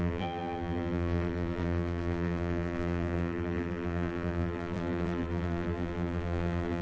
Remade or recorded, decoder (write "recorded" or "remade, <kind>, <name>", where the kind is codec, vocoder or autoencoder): remade, vocoder, BigVGAN v2